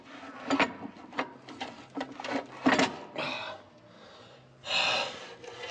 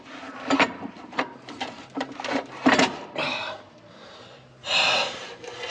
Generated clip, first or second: second